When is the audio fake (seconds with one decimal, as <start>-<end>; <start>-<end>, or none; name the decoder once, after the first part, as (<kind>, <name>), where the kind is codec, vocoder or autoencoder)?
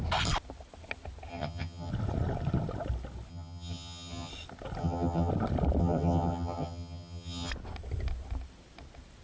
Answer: 1.3-1.9 (vocoder, HiFi-GAN); 3.3-4.3; 4.8-5.3; 5.8-7.5